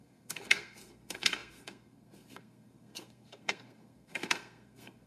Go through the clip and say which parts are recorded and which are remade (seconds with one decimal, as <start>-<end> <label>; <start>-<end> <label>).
0.0-5.1 remade